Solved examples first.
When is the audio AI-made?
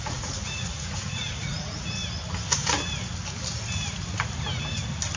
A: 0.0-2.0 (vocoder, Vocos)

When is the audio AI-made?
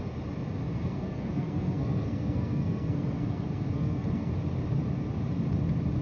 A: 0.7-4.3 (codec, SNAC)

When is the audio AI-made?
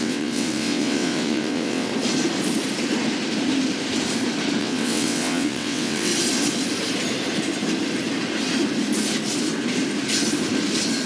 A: 0.0-1.9 (vocoder, WaveNeXt); 4.6-6.1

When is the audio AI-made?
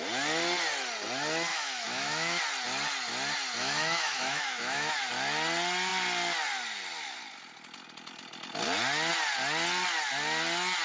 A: 1.5-2.4 (autoencoder, DAC-VAE); 3.6-5.0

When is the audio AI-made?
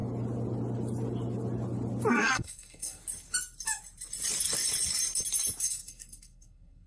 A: 2.1-3.0 (codec, SNAC); 5.6-6.9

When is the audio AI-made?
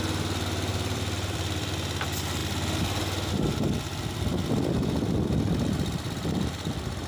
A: 0.7-1.7 (vocoder, BigVGAN v2); 3.9-4.7